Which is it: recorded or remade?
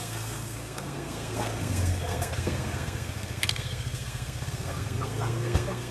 remade